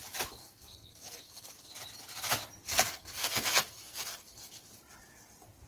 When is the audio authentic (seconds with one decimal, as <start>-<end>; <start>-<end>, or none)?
0.0-0.4; 1.7-2.7; 4.5-5.7